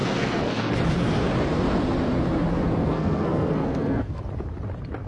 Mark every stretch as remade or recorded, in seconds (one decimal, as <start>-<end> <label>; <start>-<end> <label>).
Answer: 0.0-0.7 remade; 0.7-2.8 recorded; 2.8-4.2 remade; 4.2-5.1 recorded